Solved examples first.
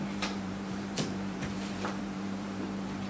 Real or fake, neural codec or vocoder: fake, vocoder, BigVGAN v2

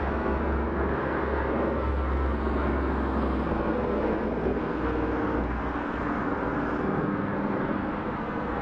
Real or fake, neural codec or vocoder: fake, codec, SNAC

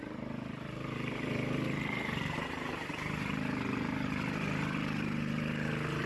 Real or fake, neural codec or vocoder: fake, vocoder, BigVGAN v2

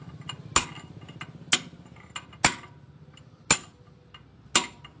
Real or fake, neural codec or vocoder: real